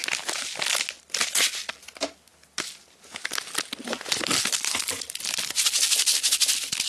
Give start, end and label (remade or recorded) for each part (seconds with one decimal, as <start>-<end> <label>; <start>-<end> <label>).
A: 0.0-6.9 recorded